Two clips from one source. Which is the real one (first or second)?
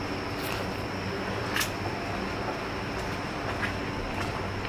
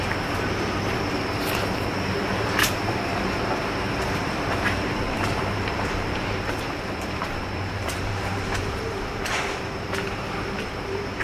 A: first